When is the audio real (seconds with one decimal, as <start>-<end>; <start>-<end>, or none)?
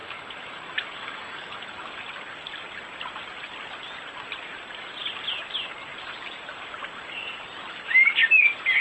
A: 1.9-8.8